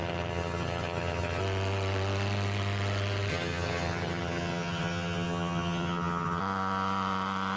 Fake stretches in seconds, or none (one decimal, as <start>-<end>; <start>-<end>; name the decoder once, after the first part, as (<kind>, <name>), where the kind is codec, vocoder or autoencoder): 0.0-1.4 (vocoder, HiFi-GAN); 3.3-6.4